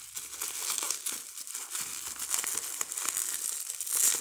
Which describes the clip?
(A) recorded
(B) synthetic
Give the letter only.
A